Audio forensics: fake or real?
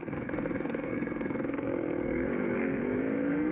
fake